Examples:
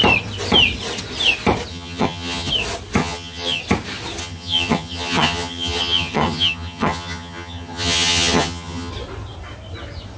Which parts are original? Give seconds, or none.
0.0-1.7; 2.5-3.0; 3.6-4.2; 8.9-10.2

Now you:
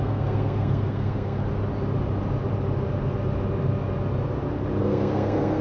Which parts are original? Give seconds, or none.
1.4-4.8

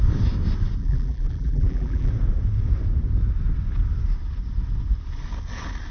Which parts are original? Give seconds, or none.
0.0-0.8; 2.1-5.9